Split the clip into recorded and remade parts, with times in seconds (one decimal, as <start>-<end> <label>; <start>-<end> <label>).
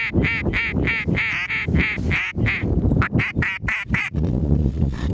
0.0-4.0 recorded; 4.0-5.1 remade